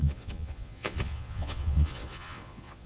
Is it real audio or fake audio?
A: fake